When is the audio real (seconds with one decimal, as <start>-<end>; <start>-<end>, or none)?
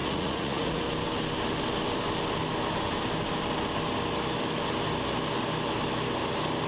0.8-6.7